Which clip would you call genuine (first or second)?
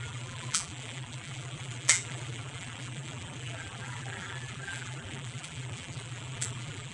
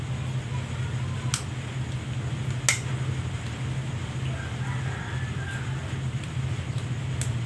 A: second